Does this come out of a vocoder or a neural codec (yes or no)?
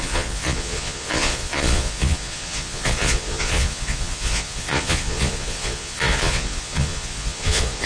yes